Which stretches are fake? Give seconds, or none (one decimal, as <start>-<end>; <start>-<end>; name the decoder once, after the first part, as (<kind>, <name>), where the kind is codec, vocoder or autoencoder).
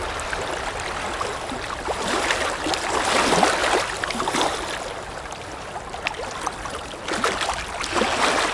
none